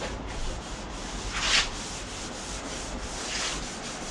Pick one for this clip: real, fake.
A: real